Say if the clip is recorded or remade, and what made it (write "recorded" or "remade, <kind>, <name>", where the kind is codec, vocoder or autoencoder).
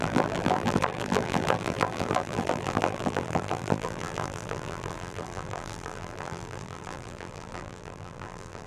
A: remade, vocoder, BigVGAN v2